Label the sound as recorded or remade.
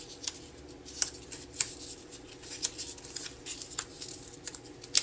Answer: recorded